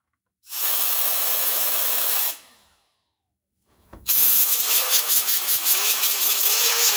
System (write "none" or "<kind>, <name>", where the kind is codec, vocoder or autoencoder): autoencoder, DAC-VAE